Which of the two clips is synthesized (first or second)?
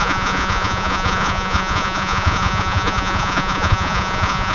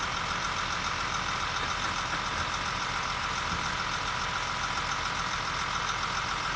first